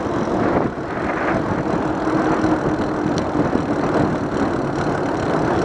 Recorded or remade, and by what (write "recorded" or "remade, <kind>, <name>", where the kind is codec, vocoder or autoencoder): recorded